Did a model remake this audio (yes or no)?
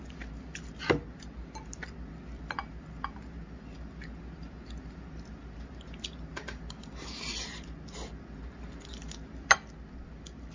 no